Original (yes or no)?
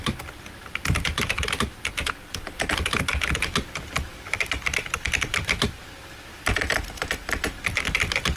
yes